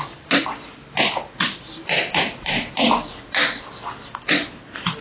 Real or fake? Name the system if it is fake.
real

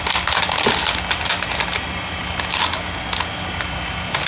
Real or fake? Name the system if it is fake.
real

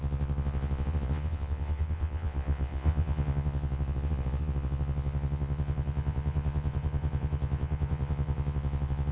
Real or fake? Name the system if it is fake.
fake, vocoder, Vocos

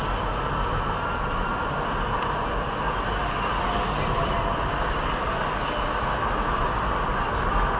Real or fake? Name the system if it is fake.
real